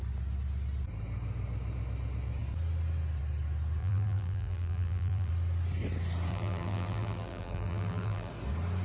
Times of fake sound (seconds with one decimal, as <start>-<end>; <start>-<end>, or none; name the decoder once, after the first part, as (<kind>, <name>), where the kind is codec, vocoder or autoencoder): 3.8-5.3 (vocoder, BigVGAN v2); 6.3-8.3